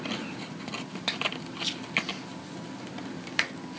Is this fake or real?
real